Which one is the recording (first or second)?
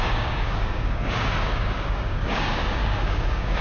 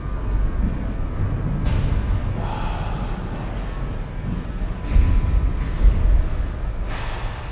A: second